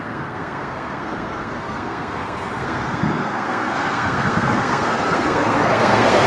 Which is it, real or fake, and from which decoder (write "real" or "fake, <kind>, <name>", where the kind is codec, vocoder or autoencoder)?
fake, codec, SNAC